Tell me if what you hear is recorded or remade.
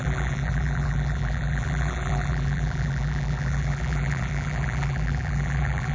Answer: remade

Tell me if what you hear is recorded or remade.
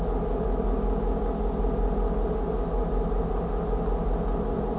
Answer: recorded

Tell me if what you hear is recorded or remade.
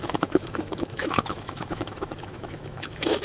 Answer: remade